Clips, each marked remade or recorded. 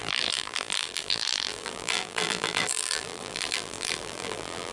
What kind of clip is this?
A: remade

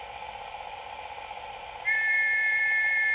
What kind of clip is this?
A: remade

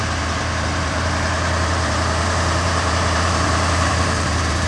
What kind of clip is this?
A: remade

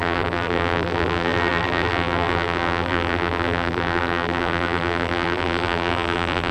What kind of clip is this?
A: remade